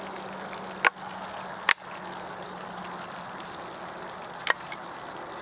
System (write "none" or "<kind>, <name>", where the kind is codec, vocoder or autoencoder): none